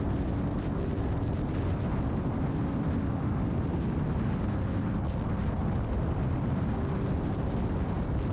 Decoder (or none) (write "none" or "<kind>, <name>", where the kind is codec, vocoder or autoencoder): none